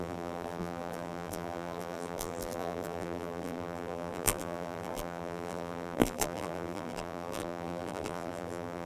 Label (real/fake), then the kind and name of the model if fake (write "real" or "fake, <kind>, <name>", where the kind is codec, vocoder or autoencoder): fake, vocoder, BigVGAN v2